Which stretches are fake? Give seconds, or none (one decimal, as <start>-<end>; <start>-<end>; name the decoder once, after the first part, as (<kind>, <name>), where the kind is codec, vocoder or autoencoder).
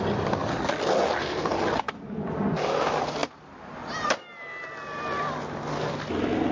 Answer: none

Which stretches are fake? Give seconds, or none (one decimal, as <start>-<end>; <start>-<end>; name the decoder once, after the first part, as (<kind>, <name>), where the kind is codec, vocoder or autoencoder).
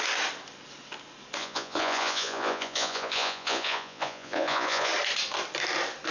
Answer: 1.4-4.9 (vocoder, Vocos)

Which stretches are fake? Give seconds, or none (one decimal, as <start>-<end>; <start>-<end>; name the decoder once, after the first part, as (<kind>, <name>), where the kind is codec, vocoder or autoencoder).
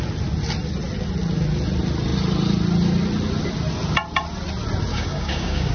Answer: 4.9-5.7 (codec, DAC)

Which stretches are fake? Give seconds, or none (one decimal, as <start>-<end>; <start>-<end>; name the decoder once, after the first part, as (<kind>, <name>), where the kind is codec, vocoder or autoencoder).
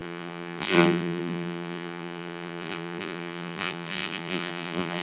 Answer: 0.0-5.0 (vocoder, BigVGAN v2)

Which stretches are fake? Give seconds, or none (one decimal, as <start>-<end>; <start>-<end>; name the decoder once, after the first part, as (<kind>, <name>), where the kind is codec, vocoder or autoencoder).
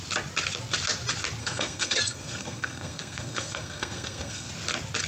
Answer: 1.4-4.5 (codec, SNAC)